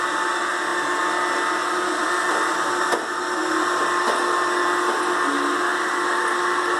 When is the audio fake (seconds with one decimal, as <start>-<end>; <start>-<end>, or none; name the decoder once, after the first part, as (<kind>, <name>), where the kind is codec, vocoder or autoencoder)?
none